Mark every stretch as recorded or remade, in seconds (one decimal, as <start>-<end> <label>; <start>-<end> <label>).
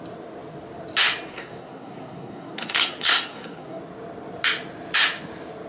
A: 0.0-1.3 recorded; 1.3-3.8 remade; 3.8-5.7 recorded